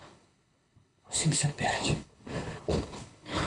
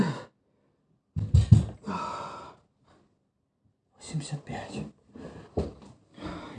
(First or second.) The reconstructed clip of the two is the first